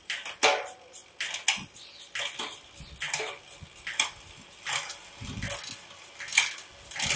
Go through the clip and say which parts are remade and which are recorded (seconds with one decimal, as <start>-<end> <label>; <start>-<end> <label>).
0.0-7.2 recorded